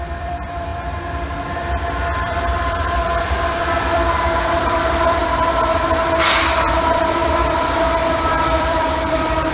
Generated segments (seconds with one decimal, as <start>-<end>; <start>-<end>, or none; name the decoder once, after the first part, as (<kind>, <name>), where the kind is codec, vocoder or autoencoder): 0.0-0.7 (vocoder, BigVGAN v2); 2.2-5.2; 6.8-9.5